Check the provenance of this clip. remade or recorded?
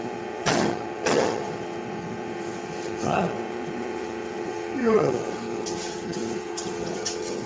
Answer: remade